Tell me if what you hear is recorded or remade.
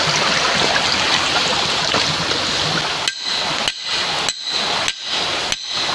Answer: recorded